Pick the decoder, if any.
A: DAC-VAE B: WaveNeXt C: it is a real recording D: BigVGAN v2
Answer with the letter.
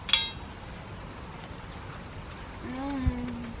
C